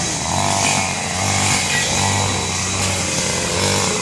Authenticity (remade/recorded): recorded